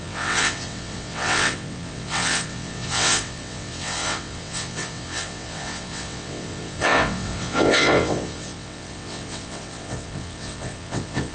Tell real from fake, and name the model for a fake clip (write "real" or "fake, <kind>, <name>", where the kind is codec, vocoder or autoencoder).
fake, vocoder, WaveNeXt